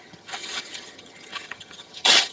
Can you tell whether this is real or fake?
fake